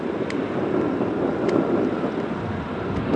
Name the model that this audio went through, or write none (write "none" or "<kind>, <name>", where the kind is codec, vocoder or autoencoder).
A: none